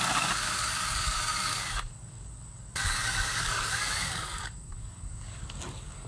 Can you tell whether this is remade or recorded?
remade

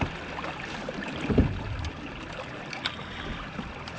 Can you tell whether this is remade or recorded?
recorded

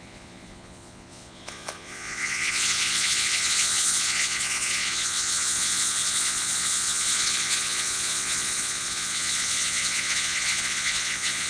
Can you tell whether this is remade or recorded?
remade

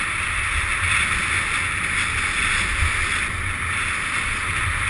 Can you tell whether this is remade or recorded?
recorded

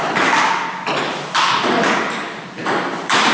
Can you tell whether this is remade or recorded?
remade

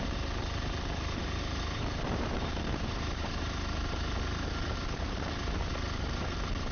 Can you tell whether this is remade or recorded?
remade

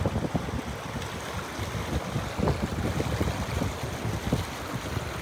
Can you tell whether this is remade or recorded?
recorded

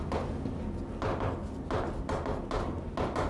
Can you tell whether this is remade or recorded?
recorded